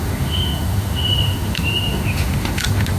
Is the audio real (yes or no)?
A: no